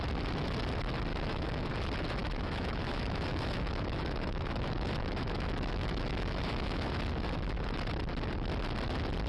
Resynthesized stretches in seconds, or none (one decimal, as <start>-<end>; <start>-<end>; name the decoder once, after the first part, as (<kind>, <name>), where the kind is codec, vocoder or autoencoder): 1.1-1.7 (autoencoder, DAC-VAE); 2.2-6.9